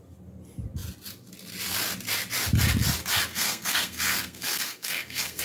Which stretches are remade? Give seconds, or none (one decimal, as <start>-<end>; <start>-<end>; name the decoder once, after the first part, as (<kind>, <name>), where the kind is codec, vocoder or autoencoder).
3.3-5.4 (codec, SNAC)